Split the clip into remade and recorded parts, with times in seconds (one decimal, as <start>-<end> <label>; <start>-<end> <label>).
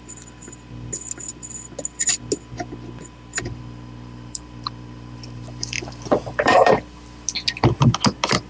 0.0-3.3 recorded; 3.3-6.8 remade; 6.8-8.5 recorded